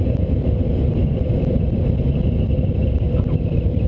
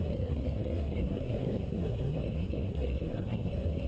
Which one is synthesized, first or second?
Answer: second